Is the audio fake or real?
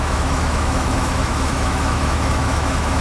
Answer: fake